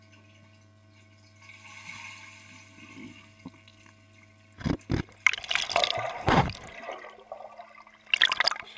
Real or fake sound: real